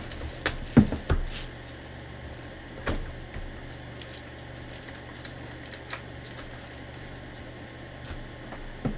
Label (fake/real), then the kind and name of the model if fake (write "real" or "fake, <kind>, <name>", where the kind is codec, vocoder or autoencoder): real